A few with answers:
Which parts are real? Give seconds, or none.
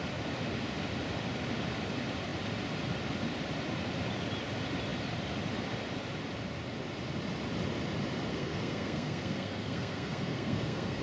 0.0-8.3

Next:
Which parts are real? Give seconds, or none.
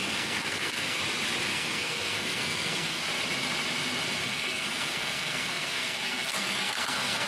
1.0-1.5; 3.0-4.2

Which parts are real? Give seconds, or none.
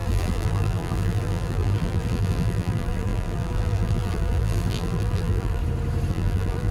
5.6-6.1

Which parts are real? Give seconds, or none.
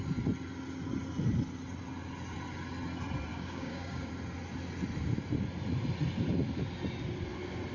0.0-3.3; 4.1-7.7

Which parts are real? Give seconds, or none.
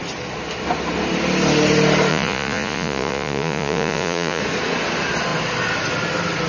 0.0-2.1; 4.4-6.5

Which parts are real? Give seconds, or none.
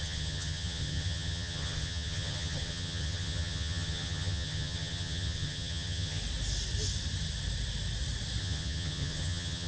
6.2-8.4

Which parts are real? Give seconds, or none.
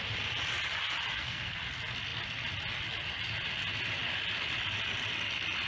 0.0-1.1; 1.6-5.7